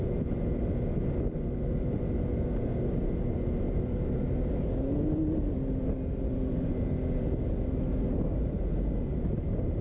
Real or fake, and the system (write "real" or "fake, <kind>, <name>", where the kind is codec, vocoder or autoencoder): real